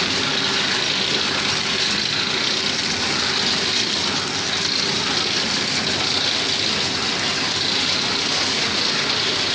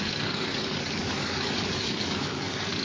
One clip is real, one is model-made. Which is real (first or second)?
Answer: first